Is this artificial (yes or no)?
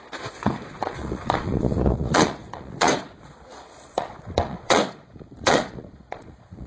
yes